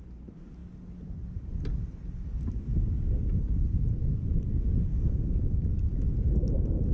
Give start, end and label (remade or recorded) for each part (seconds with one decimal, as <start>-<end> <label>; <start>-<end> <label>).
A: 0.0-6.9 recorded